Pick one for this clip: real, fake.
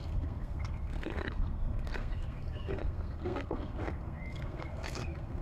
fake